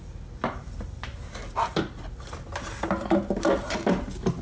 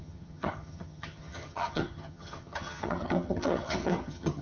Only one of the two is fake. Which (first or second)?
second